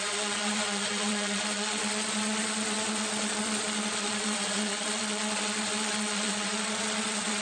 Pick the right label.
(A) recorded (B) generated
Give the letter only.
B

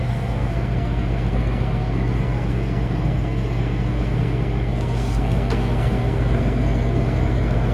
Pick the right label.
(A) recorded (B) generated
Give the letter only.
B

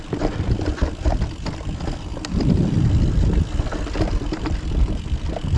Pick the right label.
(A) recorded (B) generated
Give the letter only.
A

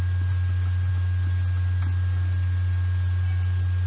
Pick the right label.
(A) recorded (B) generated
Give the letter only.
A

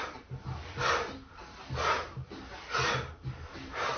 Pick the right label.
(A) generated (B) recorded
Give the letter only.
B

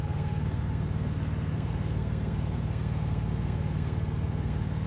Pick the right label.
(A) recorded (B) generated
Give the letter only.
B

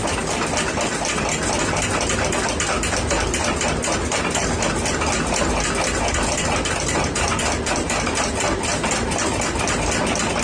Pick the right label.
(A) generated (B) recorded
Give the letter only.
B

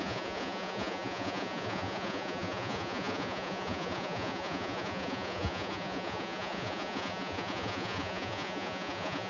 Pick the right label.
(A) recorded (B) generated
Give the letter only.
B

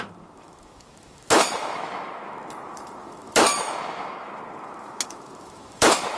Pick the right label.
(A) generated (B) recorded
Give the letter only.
A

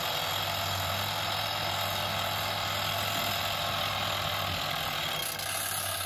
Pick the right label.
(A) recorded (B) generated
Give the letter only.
A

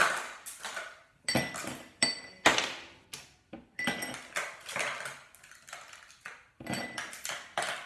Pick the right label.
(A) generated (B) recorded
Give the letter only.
B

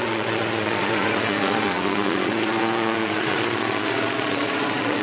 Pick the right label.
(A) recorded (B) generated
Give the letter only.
B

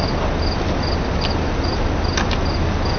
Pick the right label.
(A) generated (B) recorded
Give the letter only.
B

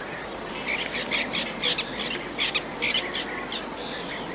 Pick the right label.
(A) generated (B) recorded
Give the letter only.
B